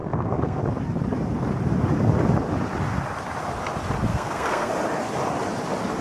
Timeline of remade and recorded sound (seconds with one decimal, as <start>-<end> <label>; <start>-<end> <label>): 0.0-0.6 remade; 0.6-4.1 recorded; 4.1-4.7 remade; 4.7-6.0 recorded